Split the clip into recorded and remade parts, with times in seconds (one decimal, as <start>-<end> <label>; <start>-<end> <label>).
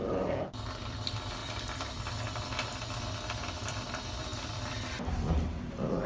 0.0-0.8 recorded; 0.8-6.1 remade